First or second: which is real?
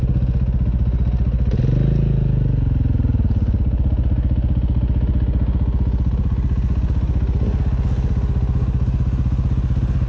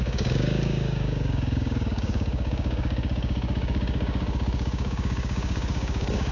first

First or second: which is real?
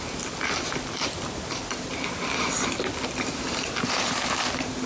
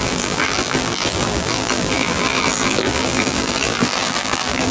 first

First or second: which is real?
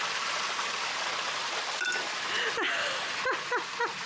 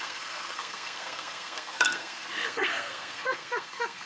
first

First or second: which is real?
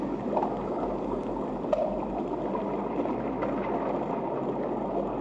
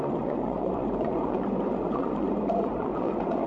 first